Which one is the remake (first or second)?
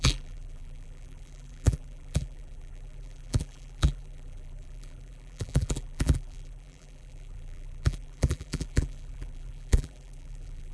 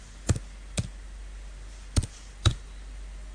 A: first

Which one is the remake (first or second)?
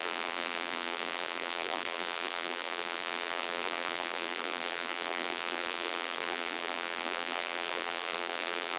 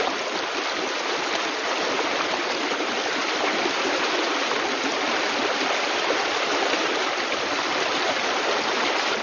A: first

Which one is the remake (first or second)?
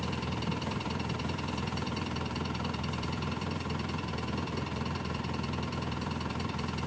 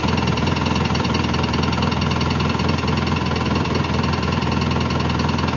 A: first